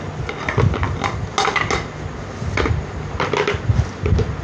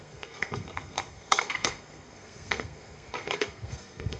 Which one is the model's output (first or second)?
second